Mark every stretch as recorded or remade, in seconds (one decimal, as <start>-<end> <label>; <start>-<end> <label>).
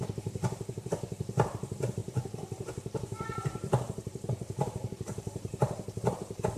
0.0-6.6 remade